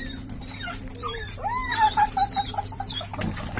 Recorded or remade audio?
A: remade